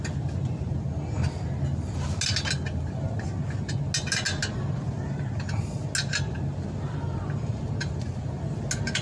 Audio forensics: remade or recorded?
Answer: recorded